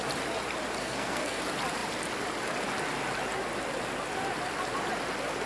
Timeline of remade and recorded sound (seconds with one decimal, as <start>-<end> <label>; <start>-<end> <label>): 0.0-0.8 recorded; 0.8-1.4 remade; 1.4-5.5 recorded